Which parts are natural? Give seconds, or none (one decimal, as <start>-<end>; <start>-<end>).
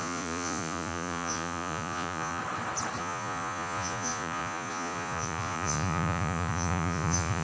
2.4-3.0